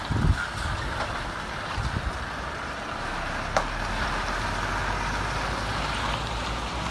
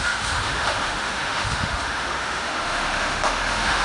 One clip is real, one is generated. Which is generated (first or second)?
second